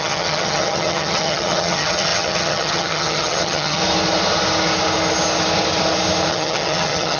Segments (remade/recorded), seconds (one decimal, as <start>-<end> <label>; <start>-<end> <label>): 0.0-3.8 remade; 3.8-6.3 recorded; 6.3-7.2 remade